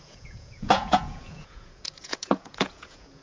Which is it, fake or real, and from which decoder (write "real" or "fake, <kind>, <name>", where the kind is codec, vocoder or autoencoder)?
fake, vocoder, Vocos